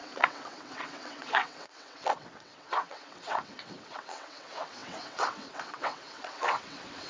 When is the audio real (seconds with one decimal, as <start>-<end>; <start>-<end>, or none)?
none